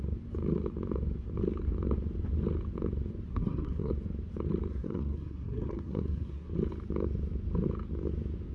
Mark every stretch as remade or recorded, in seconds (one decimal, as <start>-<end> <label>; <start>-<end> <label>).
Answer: 0.0-3.3 recorded; 3.3-3.9 remade; 3.9-4.7 recorded; 4.7-6.5 remade; 6.5-8.5 recorded